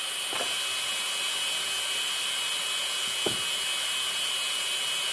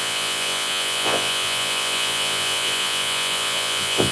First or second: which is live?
first